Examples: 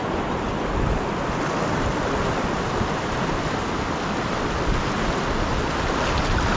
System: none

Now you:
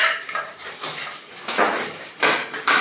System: vocoder, BigVGAN v2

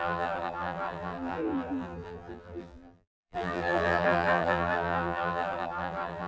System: vocoder, BigVGAN v2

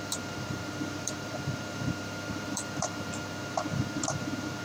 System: vocoder, BigVGAN v2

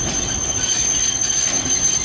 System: none